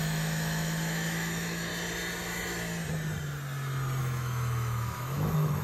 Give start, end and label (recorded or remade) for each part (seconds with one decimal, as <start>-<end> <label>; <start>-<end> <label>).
0.0-1.7 remade; 1.7-4.0 recorded; 4.0-5.6 remade